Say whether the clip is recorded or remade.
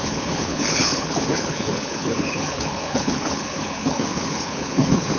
remade